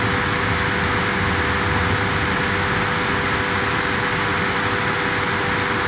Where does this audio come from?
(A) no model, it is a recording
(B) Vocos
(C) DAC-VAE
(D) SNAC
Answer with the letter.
A